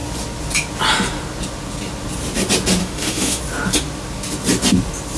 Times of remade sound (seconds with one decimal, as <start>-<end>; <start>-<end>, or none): 2.8-3.4